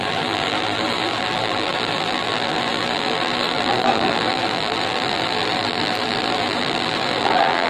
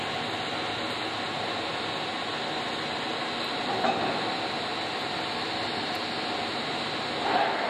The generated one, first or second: first